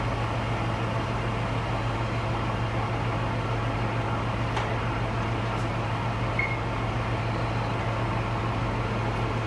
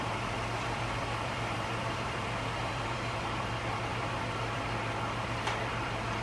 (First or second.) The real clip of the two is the first